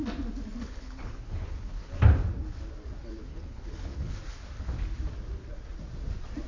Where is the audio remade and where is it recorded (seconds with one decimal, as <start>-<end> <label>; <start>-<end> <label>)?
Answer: 0.0-0.6 recorded; 0.6-2.0 remade; 2.0-3.3 recorded; 3.3-4.2 remade; 4.2-6.5 recorded